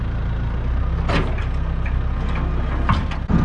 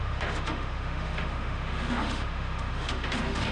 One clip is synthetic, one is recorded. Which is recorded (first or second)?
first